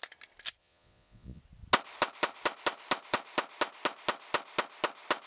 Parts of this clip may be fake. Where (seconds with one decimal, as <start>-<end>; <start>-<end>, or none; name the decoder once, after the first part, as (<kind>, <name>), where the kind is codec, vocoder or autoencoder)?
0.6-1.4 (vocoder, Vocos)